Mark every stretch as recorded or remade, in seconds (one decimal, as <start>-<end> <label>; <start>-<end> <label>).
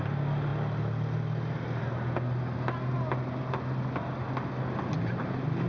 0.0-5.7 recorded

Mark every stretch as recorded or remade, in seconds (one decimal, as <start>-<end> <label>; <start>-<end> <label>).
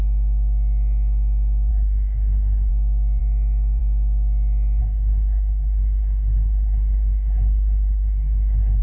0.0-1.7 recorded; 1.7-2.7 remade; 2.7-4.8 recorded; 4.8-8.8 remade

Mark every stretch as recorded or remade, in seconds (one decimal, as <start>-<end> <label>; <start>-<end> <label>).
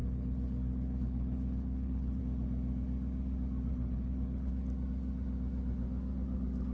0.0-2.2 remade; 2.2-3.7 recorded; 3.7-4.5 remade; 4.5-6.7 recorded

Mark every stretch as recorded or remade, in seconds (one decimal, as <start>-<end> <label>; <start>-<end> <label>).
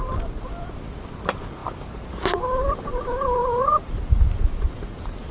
0.0-0.8 remade; 0.8-3.4 recorded; 3.4-4.3 remade; 4.3-5.3 recorded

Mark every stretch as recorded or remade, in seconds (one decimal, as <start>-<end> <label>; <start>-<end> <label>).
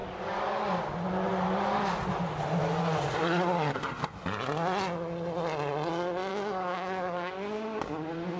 0.0-0.6 remade; 0.6-6.3 recorded; 6.3-7.3 remade; 7.3-8.4 recorded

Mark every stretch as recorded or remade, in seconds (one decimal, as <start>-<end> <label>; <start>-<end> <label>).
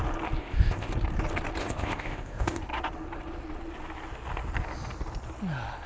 0.0-0.4 recorded; 0.4-0.9 remade; 0.9-1.6 recorded; 1.6-2.6 remade; 2.6-5.9 recorded